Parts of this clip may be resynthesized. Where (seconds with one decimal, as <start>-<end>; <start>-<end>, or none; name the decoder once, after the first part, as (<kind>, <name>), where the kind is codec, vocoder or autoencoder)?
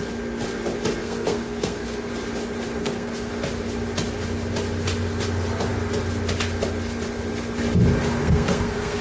1.0-2.1 (codec, SNAC); 2.8-3.3; 8.2-9.0